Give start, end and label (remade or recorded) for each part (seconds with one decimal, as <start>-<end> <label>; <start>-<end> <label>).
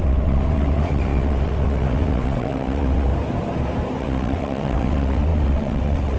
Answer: 0.0-3.1 remade; 3.1-4.0 recorded; 4.0-6.2 remade